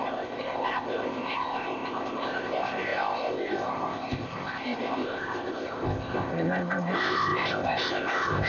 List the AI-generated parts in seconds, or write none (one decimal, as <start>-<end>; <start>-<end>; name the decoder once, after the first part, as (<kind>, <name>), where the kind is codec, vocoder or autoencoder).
0.0-8.5 (codec, ZipCodec)